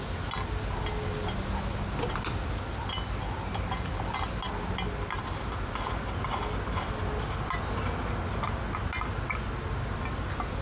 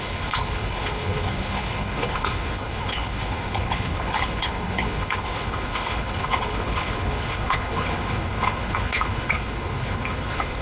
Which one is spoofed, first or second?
second